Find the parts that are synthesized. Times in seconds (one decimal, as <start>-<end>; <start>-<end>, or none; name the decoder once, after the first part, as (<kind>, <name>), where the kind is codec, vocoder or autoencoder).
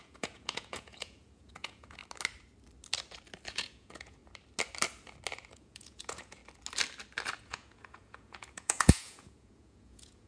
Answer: 0.0-2.0 (vocoder, Vocos); 3.5-4.2; 5.5-6.4; 7.4-10.3